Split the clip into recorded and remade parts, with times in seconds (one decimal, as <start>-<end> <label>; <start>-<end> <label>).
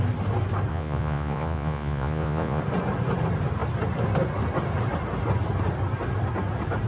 0.0-0.7 recorded; 0.7-2.6 remade; 2.6-6.9 recorded